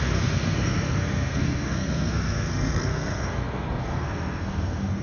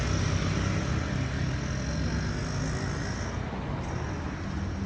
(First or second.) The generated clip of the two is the first